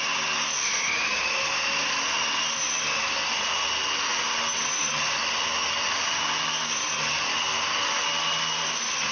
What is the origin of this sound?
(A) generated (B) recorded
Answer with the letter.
B